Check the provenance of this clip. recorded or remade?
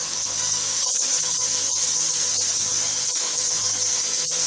remade